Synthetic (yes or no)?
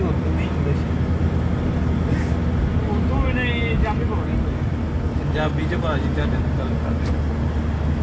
no